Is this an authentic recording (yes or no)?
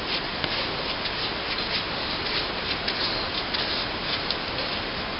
yes